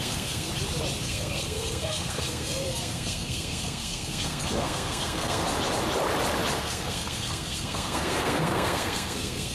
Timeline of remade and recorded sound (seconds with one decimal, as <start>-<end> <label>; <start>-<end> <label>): 0.0-0.5 remade; 0.5-1.0 recorded; 1.0-5.4 remade; 5.4-6.6 recorded; 6.6-9.5 remade